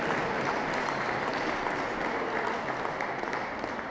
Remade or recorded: recorded